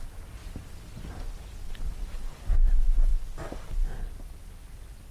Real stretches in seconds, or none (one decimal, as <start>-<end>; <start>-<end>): 0.4-1.9; 3.1-5.1